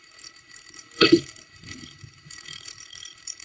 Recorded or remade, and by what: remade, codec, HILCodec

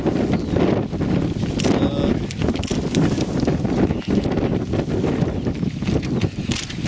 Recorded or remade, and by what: recorded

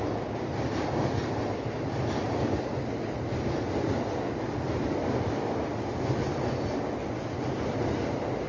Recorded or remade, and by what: recorded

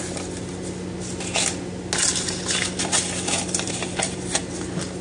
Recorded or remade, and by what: recorded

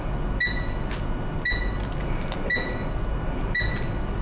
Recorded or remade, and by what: recorded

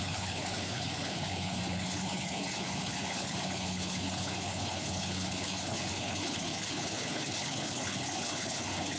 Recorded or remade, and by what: remade, codec, HILCodec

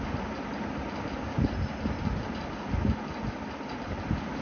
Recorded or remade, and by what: recorded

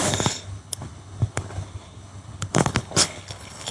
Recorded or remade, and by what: remade, codec, HILCodec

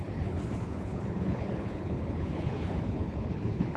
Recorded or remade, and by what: remade, codec, HILCodec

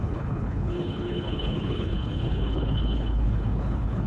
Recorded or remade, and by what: remade, codec, HILCodec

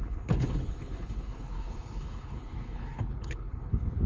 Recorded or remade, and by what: remade, codec, HILCodec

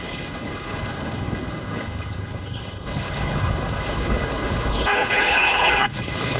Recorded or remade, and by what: remade, codec, HILCodec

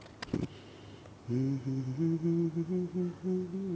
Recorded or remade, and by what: recorded